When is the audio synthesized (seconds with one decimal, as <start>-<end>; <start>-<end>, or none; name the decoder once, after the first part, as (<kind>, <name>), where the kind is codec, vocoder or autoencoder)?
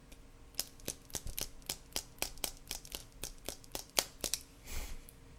2.4-5.4 (vocoder, BigVGAN v2)